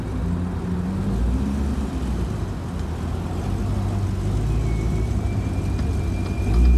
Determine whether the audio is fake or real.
real